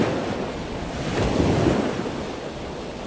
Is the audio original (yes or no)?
yes